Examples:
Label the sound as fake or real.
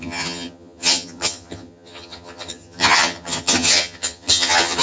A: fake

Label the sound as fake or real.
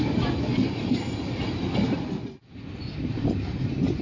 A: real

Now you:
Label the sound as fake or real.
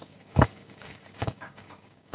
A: fake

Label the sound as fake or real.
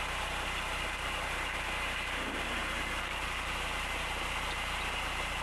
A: real